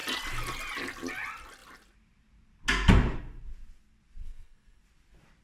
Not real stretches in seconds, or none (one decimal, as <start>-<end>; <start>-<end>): 4.2-4.8